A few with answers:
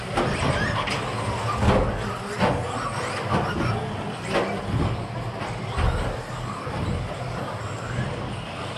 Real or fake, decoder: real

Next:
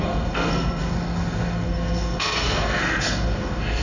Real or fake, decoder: fake, codec, SNAC